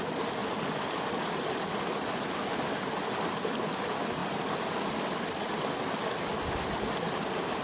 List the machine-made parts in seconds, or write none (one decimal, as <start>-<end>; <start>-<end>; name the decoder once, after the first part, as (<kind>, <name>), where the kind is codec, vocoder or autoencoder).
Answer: none